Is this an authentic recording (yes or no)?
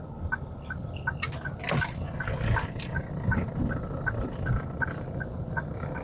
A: yes